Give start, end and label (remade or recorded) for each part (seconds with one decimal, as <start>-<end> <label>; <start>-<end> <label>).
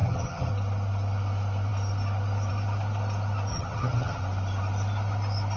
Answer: 0.0-0.5 remade; 0.5-3.5 recorded; 3.5-4.2 remade; 4.2-5.6 recorded